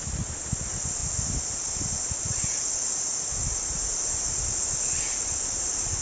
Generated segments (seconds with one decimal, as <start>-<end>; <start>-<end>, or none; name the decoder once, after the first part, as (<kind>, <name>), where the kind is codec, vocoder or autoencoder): none